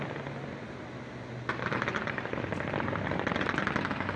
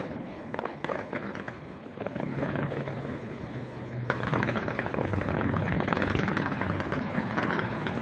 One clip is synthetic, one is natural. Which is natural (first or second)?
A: first